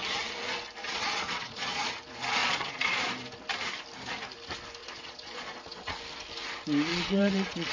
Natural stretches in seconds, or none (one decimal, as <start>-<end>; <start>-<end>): 0.0-0.8; 1.9-2.4; 3.1-4.8; 6.0-6.9